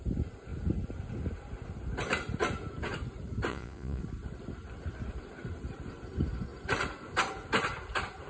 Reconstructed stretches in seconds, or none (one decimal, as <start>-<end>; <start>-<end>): 3.5-4.0